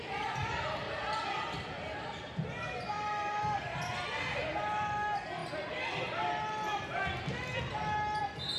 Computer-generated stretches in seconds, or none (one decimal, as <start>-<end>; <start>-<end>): none